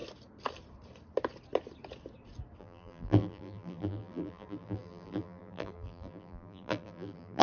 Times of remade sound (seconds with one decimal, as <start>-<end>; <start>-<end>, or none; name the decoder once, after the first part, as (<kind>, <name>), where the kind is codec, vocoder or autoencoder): 2.6-7.4 (vocoder, BigVGAN v2)